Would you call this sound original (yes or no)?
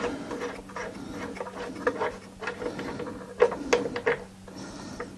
yes